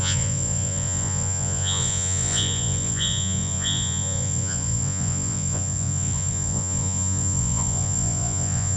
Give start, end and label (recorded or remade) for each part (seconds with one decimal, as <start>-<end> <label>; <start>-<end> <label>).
0.0-8.8 remade